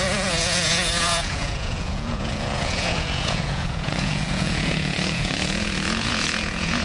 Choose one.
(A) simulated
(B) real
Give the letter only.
A